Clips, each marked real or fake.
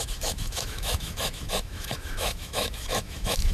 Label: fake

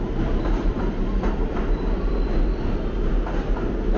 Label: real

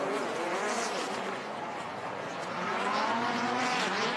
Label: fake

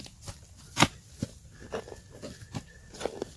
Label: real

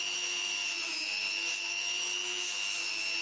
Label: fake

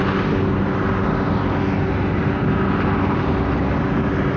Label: real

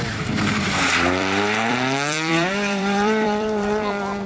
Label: fake